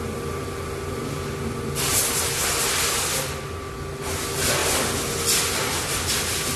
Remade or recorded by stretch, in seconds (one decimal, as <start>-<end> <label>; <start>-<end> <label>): 0.0-6.6 recorded